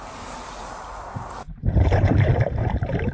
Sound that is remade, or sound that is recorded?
remade